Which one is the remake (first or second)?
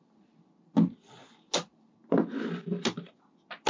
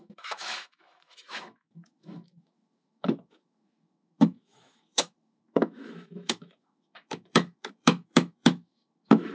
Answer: second